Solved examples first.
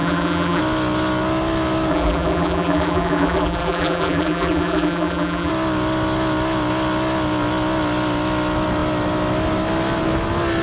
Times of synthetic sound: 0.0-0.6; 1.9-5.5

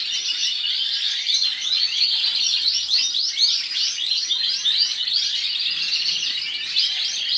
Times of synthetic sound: 0.4-3.3; 3.8-4.4

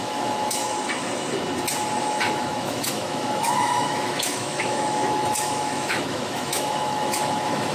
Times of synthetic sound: 0.0-0.6; 2.0-7.7

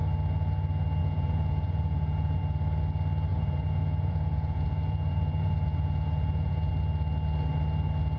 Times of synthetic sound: 1.0-2.4; 3.3-6.7

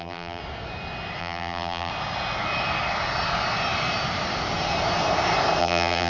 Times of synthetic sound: 0.0-0.4; 1.2-1.9; 5.6-6.1